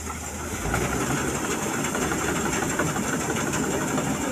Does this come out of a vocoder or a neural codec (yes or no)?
no